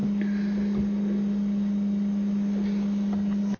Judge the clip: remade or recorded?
recorded